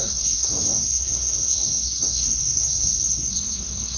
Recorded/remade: remade